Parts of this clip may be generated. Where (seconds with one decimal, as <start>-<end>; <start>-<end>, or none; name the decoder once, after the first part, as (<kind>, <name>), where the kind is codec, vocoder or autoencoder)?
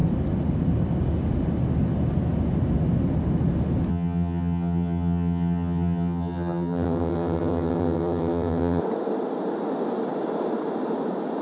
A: 3.9-8.8 (vocoder, HiFi-GAN)